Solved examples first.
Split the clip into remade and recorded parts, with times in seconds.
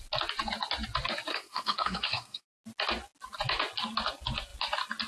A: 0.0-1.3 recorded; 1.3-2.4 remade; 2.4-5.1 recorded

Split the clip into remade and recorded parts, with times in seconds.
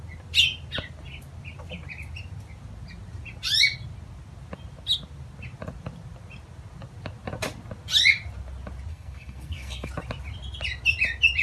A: 0.0-8.9 recorded; 8.9-9.9 remade; 9.9-11.4 recorded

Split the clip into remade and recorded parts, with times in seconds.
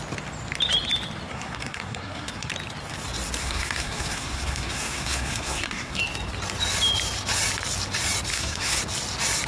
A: 0.0-1.3 recorded; 1.3-2.5 remade; 2.5-3.4 recorded; 3.4-6.0 remade; 6.0-8.3 recorded; 8.3-8.8 remade; 8.8-9.5 recorded